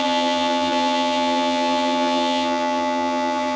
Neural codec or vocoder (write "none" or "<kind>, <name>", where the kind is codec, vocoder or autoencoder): vocoder, HiFi-GAN